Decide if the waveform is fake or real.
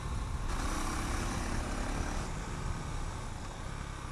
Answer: real